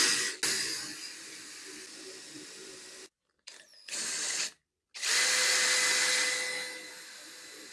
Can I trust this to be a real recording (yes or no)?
yes